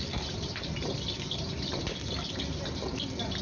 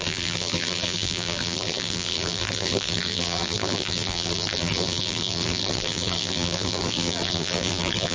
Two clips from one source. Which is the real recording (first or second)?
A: first